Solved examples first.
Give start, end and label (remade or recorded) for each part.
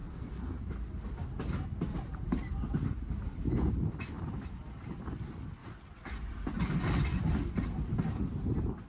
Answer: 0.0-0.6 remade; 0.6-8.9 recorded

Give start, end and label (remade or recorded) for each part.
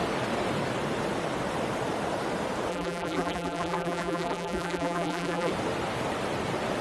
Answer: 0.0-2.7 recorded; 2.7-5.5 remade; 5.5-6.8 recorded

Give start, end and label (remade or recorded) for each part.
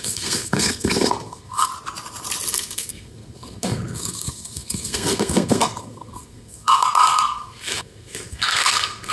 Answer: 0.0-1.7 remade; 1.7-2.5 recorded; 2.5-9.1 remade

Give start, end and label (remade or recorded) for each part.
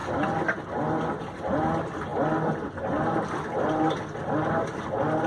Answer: 0.0-5.3 recorded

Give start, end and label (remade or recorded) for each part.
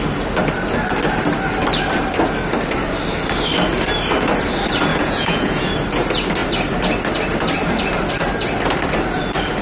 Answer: 0.0-4.9 recorded; 4.9-5.7 remade; 5.7-9.6 recorded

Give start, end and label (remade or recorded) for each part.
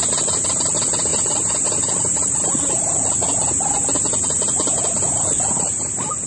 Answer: 0.0-6.3 recorded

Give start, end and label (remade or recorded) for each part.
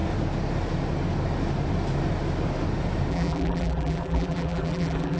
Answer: 0.0-3.1 recorded; 3.1-5.2 remade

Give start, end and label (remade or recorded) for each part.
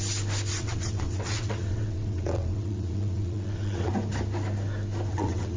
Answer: 0.0-0.5 recorded; 0.5-3.9 remade; 3.9-5.1 recorded; 5.1-5.6 remade